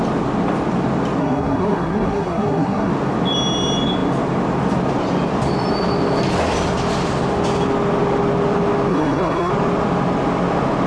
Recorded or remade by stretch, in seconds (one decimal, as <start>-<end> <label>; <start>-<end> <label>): 0.0-1.2 recorded; 1.2-2.9 remade; 2.9-8.9 recorded; 8.9-9.5 remade; 9.5-10.9 recorded

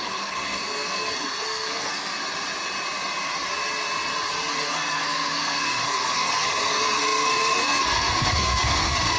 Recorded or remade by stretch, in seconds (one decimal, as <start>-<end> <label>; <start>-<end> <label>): 0.0-2.1 remade; 2.1-4.5 recorded; 4.5-9.2 remade

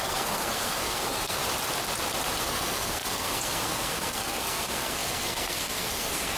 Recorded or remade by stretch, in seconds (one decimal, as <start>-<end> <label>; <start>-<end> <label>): 0.0-1.4 remade; 1.4-2.4 recorded; 2.4-6.4 remade

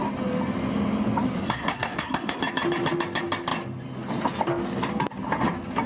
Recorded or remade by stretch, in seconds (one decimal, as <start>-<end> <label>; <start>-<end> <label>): 0.0-1.4 recorded; 1.4-2.4 remade; 2.4-5.9 recorded

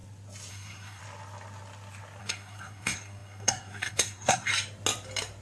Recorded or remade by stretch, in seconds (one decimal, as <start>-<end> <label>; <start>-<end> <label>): 0.0-0.5 recorded; 0.5-1.0 remade; 1.0-2.2 recorded; 2.2-4.5 remade; 4.5-5.4 recorded

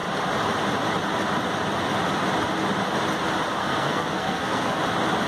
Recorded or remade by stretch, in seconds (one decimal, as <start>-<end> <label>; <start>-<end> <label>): 0.0-3.6 recorded; 3.6-4.8 remade; 4.8-5.3 recorded

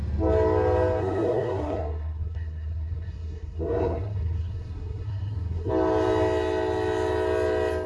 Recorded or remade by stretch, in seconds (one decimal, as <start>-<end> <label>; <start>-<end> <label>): 0.0-1.0 recorded; 1.0-5.7 remade; 5.7-7.9 recorded